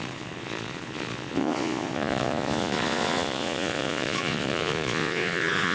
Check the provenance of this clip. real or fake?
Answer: fake